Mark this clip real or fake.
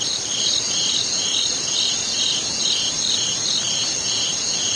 real